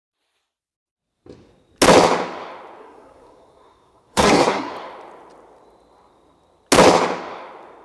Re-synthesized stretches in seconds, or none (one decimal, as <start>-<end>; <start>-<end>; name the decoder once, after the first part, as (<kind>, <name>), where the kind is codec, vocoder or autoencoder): 2.8-4.7 (codec, SNAC)